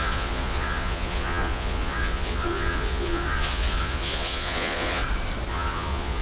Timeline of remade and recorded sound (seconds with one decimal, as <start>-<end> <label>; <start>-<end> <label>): 0.0-5.0 remade; 5.0-5.5 recorded; 5.5-6.2 remade